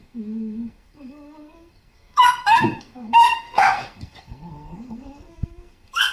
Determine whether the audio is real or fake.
fake